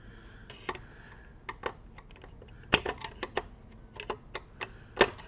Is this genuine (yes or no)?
yes